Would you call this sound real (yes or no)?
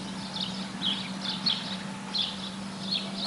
yes